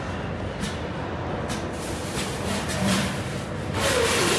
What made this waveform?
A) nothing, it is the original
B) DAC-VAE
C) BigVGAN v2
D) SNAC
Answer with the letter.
A